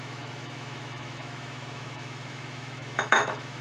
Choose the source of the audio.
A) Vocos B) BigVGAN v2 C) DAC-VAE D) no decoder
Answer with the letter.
C